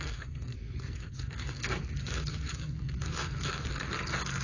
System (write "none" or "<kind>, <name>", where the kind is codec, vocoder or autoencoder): codec, SNAC